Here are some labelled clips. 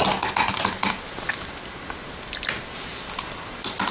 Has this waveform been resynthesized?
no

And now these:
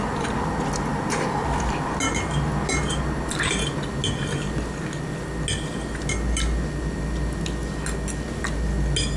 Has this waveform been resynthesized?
no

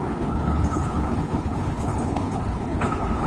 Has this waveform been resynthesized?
yes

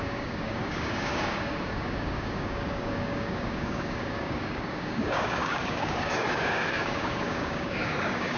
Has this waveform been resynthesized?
yes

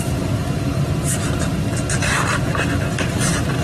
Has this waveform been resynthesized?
no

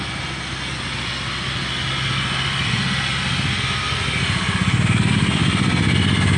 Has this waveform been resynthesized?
no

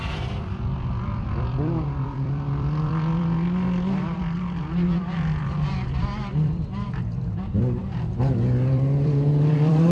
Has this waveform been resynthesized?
yes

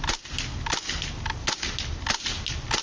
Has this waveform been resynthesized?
no